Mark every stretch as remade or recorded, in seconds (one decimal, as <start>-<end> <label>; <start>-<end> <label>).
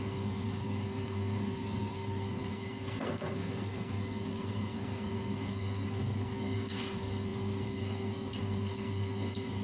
0.0-9.6 remade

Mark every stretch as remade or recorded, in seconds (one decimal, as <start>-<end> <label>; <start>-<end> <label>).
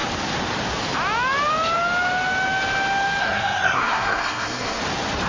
0.0-3.2 recorded; 3.2-4.8 remade; 4.8-5.3 recorded